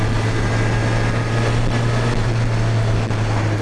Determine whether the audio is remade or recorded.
recorded